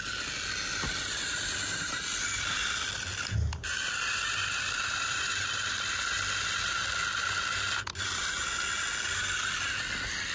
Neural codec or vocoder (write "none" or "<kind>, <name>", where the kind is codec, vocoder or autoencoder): none